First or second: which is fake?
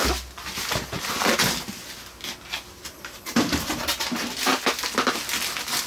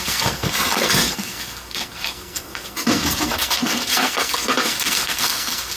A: second